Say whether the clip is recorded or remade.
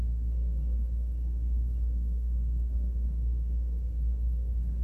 remade